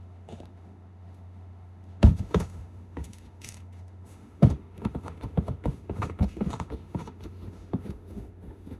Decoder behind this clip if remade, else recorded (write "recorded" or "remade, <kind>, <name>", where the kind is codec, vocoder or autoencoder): remade, autoencoder, DAC-VAE